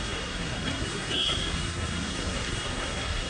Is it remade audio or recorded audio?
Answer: remade